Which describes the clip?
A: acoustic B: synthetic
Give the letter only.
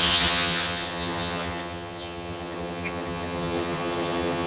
B